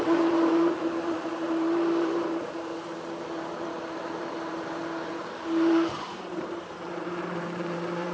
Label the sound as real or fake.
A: fake